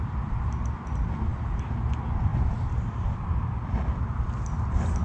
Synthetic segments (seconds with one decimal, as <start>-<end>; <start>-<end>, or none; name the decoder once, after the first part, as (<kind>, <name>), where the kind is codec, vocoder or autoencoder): 2.3-3.5 (vocoder, BigVGAN v2)

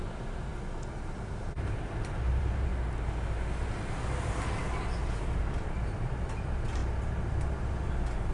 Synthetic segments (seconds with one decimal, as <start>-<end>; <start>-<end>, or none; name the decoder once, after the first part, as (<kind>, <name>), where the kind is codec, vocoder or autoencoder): 0.0-0.5 (vocoder, BigVGAN v2); 1.0-2.7; 5.2-6.8